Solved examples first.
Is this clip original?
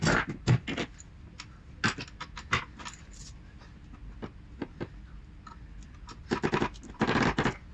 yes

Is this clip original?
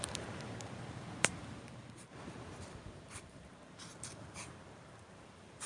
no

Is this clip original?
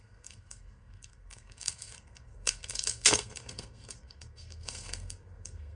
no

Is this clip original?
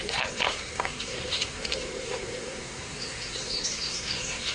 no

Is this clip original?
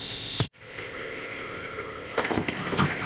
no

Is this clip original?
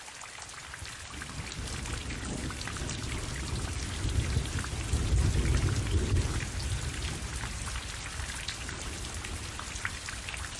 yes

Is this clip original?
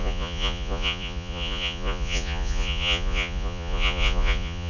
no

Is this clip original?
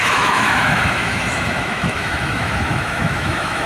no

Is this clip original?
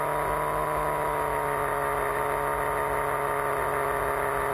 yes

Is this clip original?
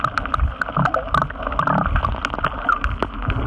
yes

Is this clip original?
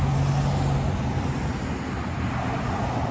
yes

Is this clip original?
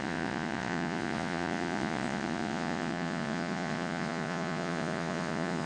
no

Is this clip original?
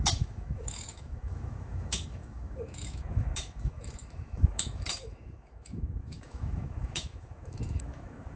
no